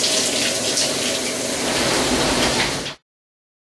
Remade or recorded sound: recorded